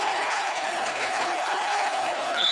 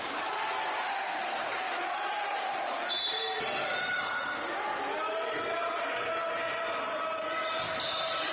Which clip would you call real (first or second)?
second